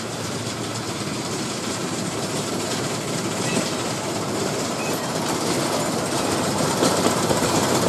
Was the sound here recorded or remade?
remade